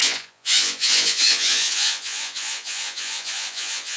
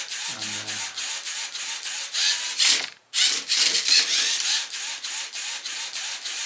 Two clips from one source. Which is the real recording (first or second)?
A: second